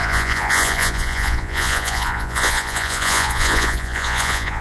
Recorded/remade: remade